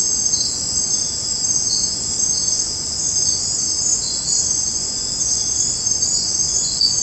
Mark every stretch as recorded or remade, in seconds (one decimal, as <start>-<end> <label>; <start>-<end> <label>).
0.0-7.0 remade